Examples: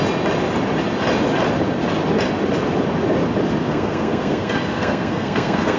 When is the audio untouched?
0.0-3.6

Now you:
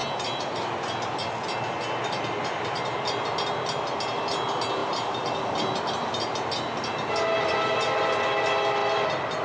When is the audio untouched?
1.0-4.8; 5.8-8.8

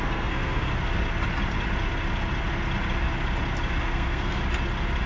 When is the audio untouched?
0.7-3.8; 4.4-5.1

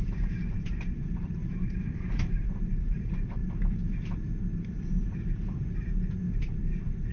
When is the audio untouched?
3.4-6.4

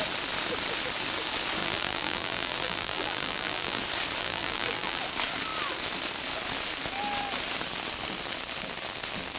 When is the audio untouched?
0.0-1.6; 3.8-4.2; 5.0-9.4

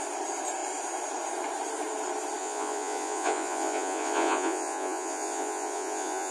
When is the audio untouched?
0.0-2.4

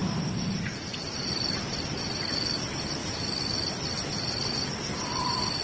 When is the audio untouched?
3.0-4.7

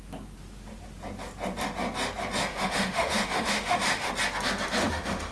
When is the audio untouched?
0.0-2.5; 4.1-4.8